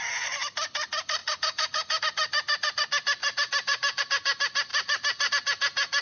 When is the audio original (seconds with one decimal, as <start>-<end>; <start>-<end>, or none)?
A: 0.0-3.2; 4.0-4.7; 5.3-6.0

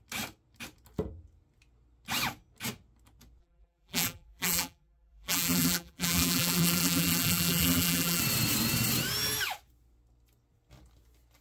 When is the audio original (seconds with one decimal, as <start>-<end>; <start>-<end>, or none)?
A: 0.0-3.4; 8.2-11.4

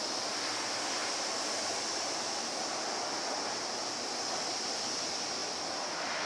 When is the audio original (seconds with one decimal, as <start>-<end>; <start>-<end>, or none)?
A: 0.0-6.3

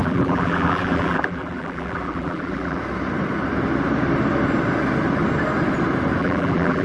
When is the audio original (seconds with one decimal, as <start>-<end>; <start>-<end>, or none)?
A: 2.8-6.2

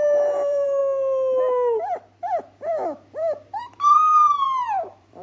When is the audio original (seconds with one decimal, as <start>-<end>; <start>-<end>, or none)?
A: 0.8-3.6

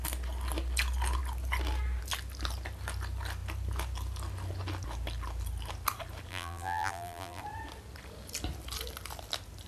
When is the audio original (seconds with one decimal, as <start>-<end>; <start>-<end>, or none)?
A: 0.0-6.3; 7.4-9.7

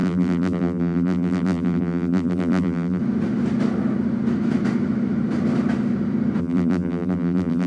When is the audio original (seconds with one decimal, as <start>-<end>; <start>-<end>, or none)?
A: 3.0-6.4

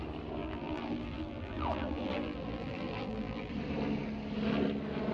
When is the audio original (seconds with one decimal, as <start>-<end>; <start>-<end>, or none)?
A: 0.0-0.4; 3.5-5.1